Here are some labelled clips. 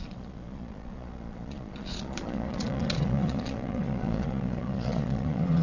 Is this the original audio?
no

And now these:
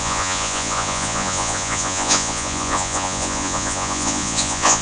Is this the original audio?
no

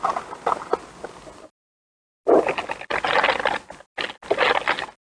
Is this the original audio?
yes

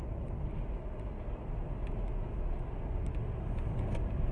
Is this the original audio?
yes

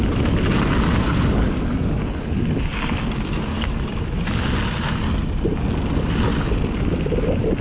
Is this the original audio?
yes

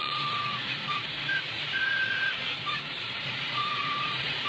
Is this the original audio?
no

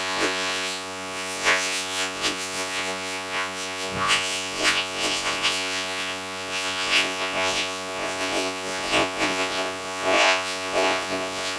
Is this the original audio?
no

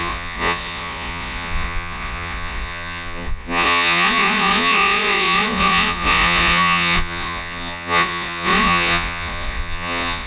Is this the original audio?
no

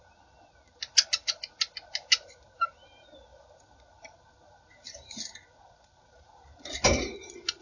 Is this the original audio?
yes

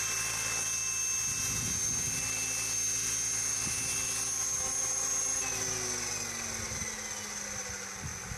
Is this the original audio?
yes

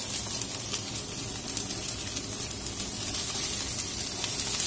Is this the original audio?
yes